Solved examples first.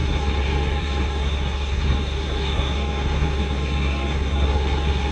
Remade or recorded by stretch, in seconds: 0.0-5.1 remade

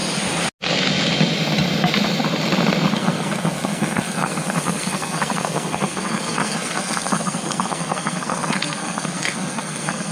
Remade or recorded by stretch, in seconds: 0.0-2.9 recorded; 2.9-10.1 remade

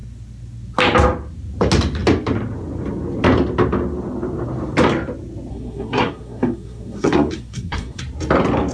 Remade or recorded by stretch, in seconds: 0.0-5.5 recorded; 5.5-8.0 remade; 8.0-8.7 recorded